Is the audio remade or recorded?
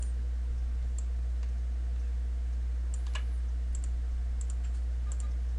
recorded